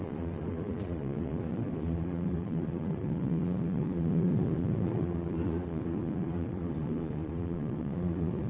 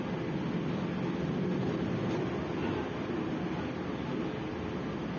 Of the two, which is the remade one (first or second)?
first